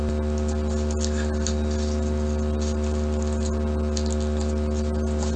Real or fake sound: real